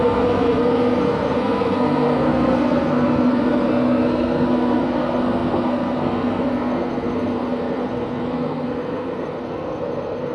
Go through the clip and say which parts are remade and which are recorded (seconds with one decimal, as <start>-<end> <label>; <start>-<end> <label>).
0.0-10.3 remade